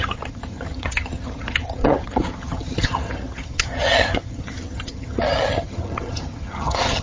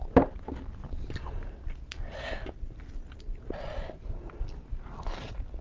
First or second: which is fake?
first